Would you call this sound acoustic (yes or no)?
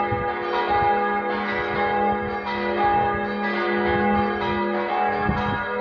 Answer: yes